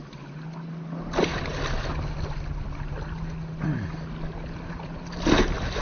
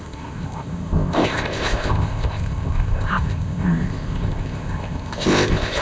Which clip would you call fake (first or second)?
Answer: second